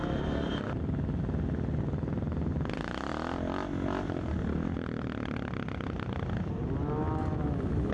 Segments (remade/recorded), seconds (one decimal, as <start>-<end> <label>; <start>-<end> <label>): 0.0-7.9 recorded